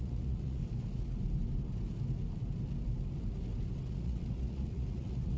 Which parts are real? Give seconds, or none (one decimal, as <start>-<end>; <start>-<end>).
0.6-3.8

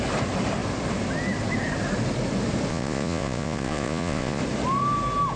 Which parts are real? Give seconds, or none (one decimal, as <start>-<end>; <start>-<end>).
0.0-2.7; 4.4-5.4

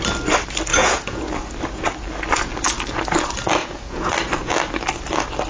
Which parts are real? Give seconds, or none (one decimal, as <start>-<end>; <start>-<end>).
0.0-0.7; 1.3-3.6; 4.1-5.5

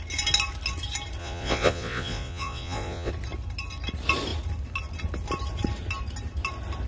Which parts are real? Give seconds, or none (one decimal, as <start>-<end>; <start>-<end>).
0.0-1.2; 3.1-6.9

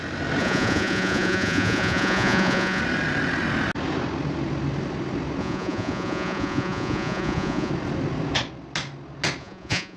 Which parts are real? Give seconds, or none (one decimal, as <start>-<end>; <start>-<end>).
0.0-0.4; 2.8-5.4; 7.7-9.4

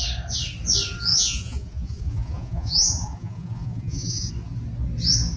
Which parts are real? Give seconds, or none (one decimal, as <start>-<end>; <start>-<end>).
0.0-1.1; 4.3-5.4